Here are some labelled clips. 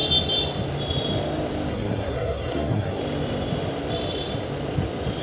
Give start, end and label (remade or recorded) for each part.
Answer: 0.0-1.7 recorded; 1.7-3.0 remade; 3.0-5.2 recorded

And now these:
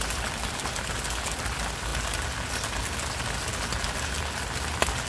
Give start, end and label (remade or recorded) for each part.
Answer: 0.0-5.1 recorded

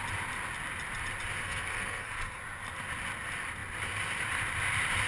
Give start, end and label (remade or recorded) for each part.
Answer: 0.0-1.4 recorded; 1.4-2.4 remade; 2.4-5.1 recorded

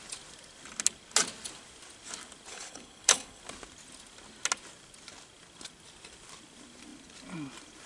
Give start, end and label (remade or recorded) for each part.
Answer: 0.0-2.5 recorded; 2.5-3.4 remade; 3.4-7.9 recorded

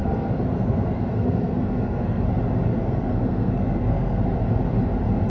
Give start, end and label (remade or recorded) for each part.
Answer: 0.0-2.2 remade; 2.2-2.7 recorded; 2.7-4.2 remade; 4.2-5.3 recorded

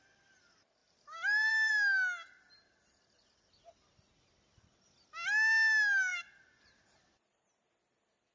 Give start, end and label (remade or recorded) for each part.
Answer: 0.0-0.8 recorded; 0.8-1.7 remade; 1.7-8.3 recorded

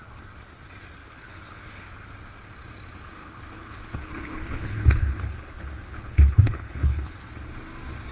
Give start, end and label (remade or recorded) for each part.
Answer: 0.0-1.0 recorded; 1.0-1.9 remade; 1.9-3.2 recorded; 3.2-7.1 remade; 7.1-8.1 recorded